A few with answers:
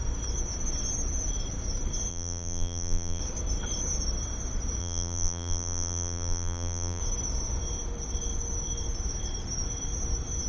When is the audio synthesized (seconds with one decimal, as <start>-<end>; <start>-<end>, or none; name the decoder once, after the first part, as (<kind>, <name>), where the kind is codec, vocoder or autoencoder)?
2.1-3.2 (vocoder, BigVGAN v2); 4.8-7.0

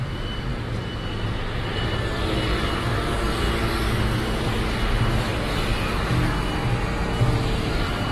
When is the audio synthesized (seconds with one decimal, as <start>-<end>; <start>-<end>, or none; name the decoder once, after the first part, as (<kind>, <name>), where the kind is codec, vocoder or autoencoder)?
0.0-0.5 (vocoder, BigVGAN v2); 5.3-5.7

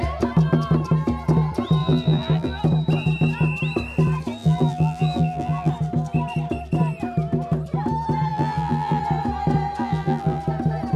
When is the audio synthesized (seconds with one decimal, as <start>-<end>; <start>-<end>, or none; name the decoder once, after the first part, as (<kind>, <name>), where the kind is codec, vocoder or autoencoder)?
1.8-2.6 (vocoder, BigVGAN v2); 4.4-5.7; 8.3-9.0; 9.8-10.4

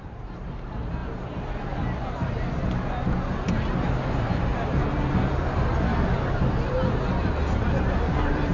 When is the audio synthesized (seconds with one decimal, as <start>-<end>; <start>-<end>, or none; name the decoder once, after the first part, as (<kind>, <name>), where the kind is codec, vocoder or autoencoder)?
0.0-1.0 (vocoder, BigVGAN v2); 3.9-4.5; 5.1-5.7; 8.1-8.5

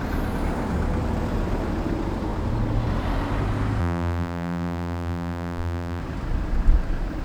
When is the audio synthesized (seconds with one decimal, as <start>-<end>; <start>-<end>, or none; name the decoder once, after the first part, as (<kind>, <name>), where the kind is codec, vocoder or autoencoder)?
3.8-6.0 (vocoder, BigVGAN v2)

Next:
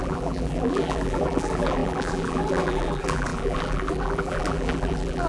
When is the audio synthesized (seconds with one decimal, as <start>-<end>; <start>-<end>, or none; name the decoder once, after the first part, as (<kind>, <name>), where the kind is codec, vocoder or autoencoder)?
0.0-5.3 (vocoder, BigVGAN v2)